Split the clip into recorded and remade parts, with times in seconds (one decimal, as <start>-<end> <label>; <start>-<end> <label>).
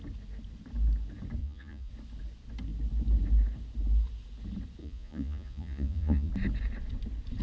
0.0-1.4 recorded; 1.4-1.9 remade; 1.9-4.8 recorded; 4.8-6.3 remade; 6.3-7.4 recorded